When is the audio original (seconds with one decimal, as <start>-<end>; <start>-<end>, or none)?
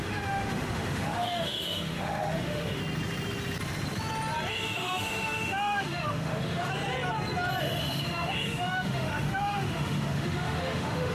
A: 2.8-4.5; 6.7-7.6